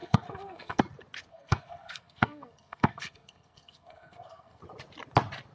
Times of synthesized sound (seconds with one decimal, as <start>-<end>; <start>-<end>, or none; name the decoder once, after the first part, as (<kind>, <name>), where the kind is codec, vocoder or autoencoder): 0.0-0.8 (codec, SNAC); 1.3-4.6